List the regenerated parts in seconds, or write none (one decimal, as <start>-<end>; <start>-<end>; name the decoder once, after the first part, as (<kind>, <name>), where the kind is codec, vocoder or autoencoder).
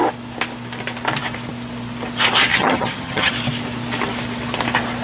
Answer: 2.5-3.3 (vocoder, HiFi-GAN)